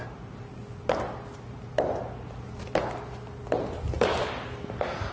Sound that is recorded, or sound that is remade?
recorded